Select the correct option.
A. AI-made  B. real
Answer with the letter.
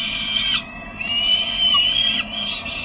B